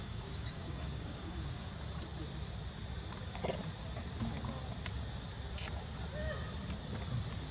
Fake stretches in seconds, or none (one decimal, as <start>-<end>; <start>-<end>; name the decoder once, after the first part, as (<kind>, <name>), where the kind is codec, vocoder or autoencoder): 0.0-1.7 (codec, DAC)